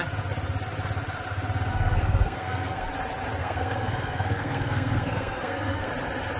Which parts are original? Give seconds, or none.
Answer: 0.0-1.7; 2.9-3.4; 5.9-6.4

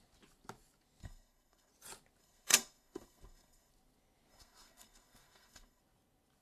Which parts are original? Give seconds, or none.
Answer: 0.0-1.0; 1.7-2.2; 3.7-4.3; 5.8-6.4